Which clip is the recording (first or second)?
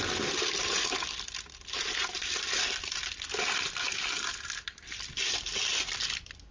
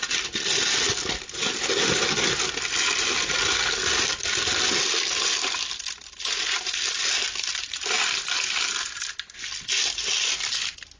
second